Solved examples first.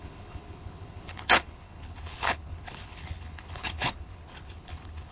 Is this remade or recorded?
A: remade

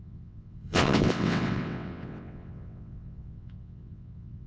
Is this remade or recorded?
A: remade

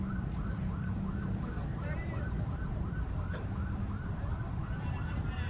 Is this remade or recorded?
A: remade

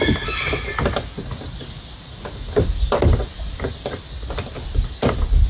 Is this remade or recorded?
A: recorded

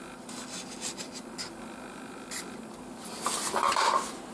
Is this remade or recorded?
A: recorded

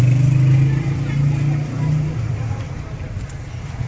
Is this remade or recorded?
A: recorded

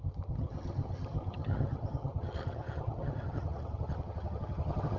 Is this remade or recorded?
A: remade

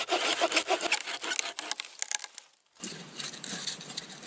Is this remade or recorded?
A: recorded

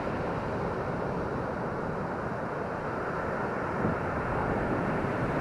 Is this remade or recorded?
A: recorded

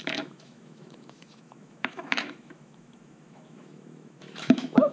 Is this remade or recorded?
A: remade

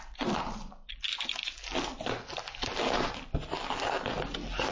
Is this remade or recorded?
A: recorded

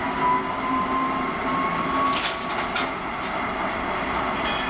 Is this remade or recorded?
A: recorded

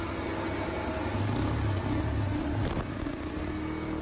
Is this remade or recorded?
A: recorded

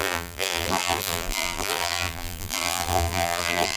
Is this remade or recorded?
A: remade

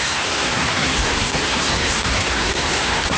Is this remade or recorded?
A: remade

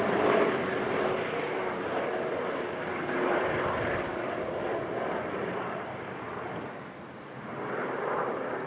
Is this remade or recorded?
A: remade